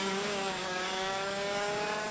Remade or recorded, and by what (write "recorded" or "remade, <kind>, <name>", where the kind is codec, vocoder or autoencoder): remade, codec, DAC